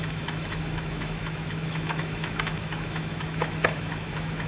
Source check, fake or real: fake